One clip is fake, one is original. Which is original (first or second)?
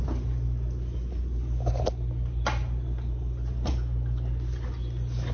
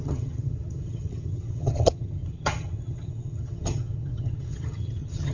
first